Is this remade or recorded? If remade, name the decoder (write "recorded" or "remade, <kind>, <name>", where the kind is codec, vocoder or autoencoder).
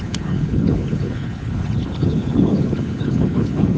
remade, codec, HILCodec